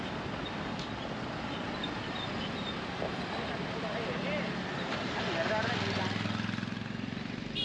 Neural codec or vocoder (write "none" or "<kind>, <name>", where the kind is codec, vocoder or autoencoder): none